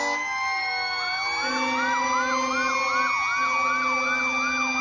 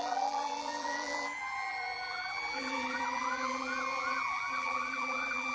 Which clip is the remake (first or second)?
second